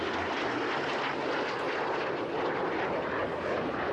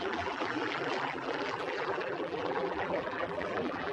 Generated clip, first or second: second